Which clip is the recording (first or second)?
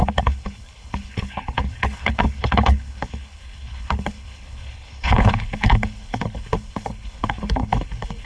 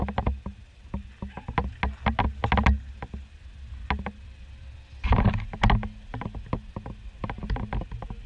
second